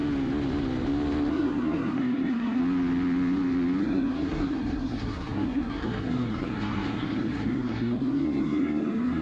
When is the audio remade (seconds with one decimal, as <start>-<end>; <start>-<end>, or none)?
1.3-2.6; 3.8-9.2